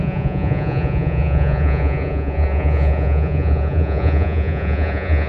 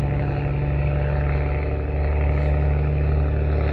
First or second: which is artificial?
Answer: first